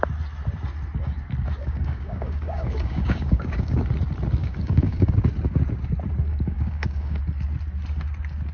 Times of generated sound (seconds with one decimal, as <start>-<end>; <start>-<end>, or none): 1.6-3.8; 4.4-5.1; 6.3-7.2